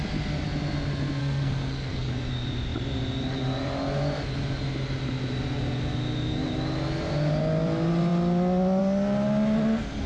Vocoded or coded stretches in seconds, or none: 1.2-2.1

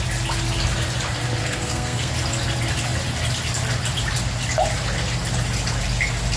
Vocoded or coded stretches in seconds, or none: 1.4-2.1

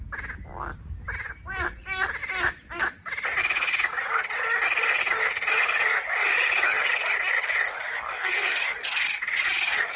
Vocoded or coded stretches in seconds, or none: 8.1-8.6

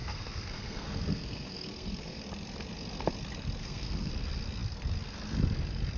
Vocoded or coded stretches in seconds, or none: 0.0-2.2; 3.6-4.1

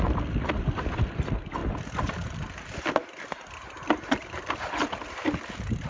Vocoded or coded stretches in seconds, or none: none

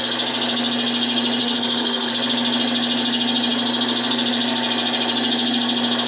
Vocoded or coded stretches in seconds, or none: 1.4-2.1